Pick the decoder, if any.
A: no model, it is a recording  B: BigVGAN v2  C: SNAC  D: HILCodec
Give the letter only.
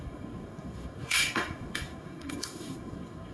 C